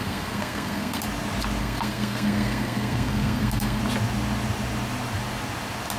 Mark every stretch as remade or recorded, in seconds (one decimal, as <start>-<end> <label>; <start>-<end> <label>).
0.0-1.0 remade; 1.0-1.6 recorded; 1.6-3.8 remade; 3.8-6.0 recorded